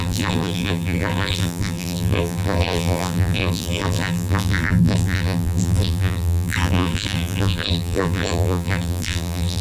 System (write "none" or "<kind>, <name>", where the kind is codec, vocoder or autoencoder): vocoder, BigVGAN v2